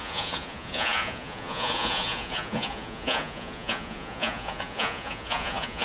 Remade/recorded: remade